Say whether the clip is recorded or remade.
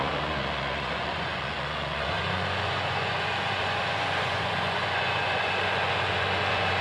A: remade